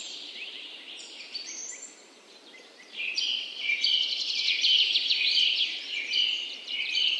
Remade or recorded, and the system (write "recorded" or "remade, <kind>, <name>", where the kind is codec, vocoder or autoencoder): remade, vocoder, BigVGAN v2